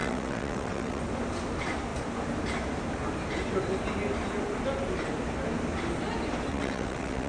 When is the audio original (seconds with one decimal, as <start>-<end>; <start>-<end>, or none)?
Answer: 1.0-6.5